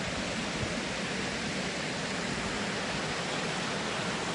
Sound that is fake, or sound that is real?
real